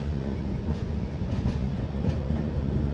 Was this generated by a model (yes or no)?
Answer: yes